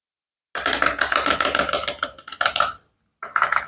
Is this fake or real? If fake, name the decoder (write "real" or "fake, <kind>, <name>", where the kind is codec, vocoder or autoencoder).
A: real